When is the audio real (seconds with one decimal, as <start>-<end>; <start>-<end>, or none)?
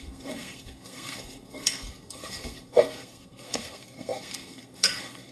none